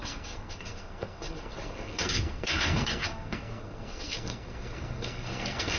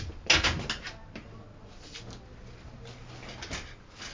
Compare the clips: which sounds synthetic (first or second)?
first